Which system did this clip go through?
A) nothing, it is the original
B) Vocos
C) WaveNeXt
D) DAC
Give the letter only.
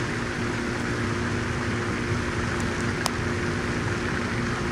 A